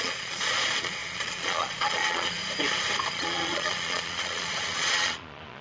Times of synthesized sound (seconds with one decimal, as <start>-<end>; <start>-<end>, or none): 0.0-2.4; 3.1-5.6